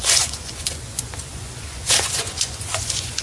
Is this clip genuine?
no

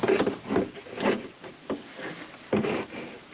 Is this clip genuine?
yes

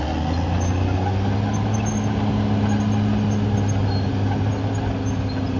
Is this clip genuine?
yes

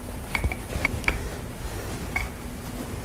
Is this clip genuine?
yes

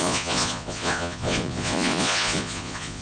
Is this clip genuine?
no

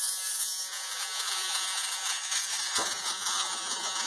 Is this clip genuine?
no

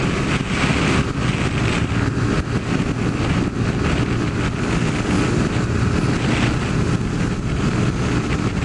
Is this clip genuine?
yes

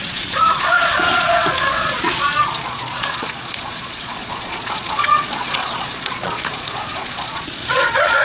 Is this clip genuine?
no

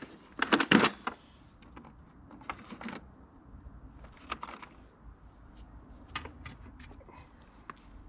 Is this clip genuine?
yes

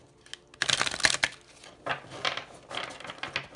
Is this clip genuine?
yes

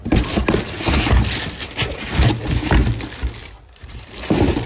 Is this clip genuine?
yes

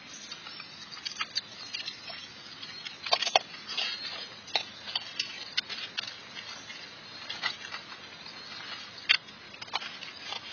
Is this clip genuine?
yes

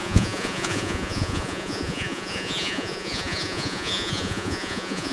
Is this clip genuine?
no